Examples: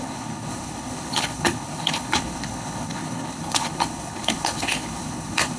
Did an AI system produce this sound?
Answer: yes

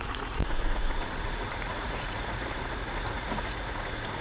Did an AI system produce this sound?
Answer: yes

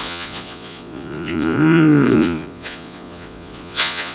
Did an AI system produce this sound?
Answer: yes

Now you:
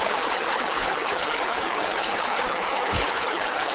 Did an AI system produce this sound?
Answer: yes